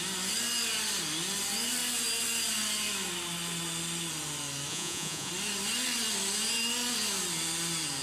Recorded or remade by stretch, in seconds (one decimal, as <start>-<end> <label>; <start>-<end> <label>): 0.0-4.7 recorded; 4.7-5.3 remade; 5.3-8.0 recorded